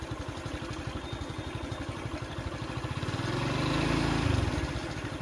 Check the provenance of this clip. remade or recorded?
recorded